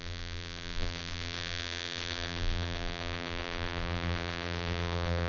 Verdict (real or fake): fake